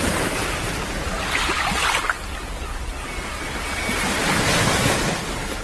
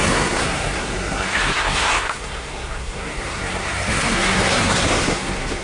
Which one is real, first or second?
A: first